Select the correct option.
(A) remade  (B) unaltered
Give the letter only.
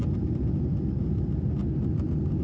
B